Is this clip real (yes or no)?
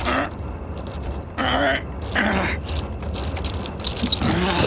yes